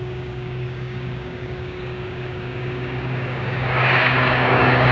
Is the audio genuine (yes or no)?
no